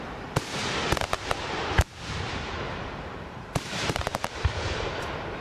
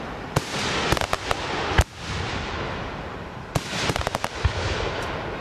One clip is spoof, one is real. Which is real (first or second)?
second